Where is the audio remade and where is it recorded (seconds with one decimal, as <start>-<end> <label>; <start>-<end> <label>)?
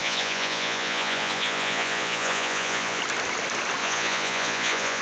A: 0.0-3.0 remade; 3.0-3.8 recorded; 3.8-5.0 remade